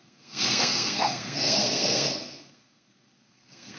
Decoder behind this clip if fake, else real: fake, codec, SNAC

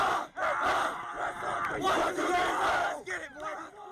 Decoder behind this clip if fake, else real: real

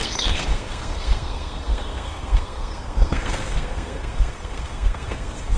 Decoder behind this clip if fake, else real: fake, codec, SNAC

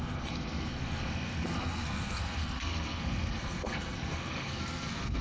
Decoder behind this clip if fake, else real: fake, codec, SNAC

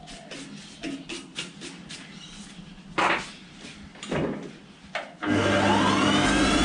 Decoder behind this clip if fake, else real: real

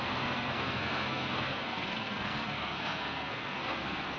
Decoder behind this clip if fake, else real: fake, codec, SNAC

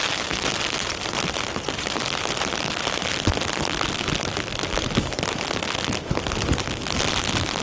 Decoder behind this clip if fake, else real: real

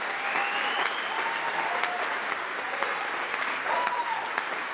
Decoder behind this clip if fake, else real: real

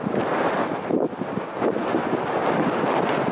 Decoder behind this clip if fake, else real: real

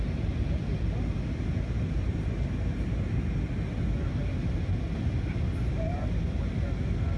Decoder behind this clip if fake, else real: real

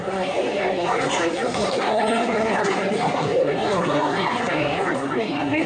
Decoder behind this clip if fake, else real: fake, codec, SNAC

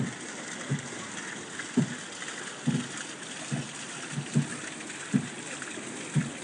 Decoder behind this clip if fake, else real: real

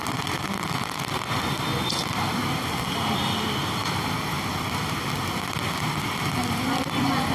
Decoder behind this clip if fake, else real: real